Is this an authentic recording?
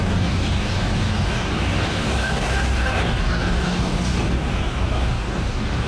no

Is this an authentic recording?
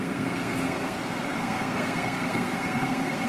no